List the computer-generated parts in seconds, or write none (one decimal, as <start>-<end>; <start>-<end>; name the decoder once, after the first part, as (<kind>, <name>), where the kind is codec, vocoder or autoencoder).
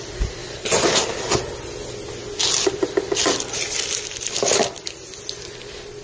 none